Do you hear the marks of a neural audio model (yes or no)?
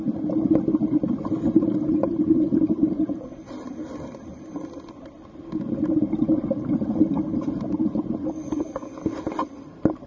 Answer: no